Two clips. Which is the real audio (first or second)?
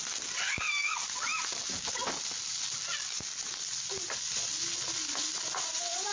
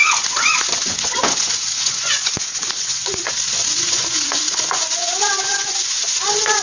first